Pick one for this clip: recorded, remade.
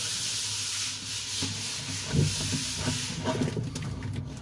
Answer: recorded